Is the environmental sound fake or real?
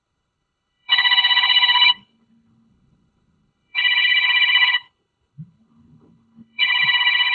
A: fake